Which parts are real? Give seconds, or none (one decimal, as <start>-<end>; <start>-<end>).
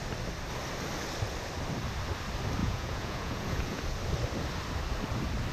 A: 0.0-2.6; 3.8-5.5